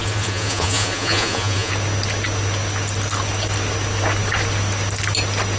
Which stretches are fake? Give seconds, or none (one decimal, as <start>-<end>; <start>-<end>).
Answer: 0.0-1.7